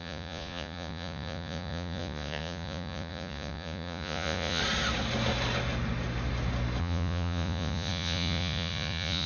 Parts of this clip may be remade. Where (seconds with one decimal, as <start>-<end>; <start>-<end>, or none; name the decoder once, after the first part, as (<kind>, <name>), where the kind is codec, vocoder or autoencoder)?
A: 0.0-4.6 (vocoder, Vocos); 6.8-9.3